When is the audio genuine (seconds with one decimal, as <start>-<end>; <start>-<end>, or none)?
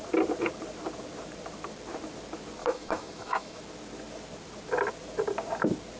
0.0-2.6; 3.6-6.0